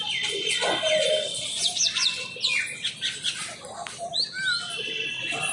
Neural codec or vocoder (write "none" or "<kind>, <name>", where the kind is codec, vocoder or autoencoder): none